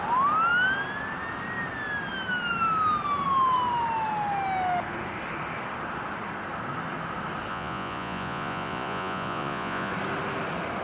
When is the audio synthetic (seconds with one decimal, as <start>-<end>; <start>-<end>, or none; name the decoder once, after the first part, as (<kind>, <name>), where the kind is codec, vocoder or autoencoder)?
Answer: 7.5-9.9 (vocoder, Vocos)